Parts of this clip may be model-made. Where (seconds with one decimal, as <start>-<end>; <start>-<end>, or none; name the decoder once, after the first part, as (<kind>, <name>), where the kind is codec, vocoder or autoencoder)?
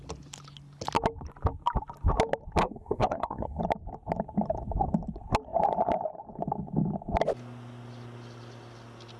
2.6-3.6 (codec, SNAC)